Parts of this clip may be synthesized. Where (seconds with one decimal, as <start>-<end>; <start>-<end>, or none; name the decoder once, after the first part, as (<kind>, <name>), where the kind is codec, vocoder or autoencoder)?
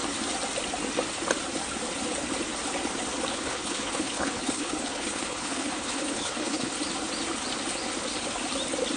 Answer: 3.3-6.7 (codec, HILCodec)